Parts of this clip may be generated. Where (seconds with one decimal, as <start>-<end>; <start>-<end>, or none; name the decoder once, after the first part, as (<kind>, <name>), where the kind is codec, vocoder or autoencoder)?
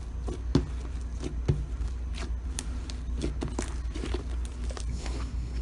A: 4.9-5.6 (codec, SNAC)